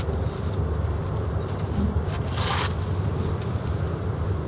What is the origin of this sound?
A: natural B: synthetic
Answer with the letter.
A